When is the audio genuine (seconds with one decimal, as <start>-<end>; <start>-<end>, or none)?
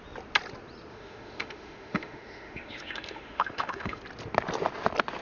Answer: 0.0-0.9; 4.0-5.2